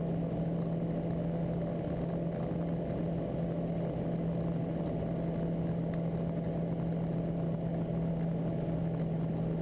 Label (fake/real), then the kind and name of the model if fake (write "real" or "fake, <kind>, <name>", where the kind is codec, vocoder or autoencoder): real